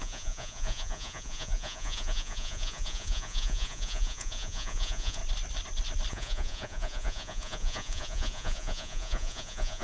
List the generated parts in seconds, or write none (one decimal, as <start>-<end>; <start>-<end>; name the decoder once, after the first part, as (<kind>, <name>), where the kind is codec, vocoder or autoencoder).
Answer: 0.0-5.2 (vocoder, Vocos); 6.1-9.8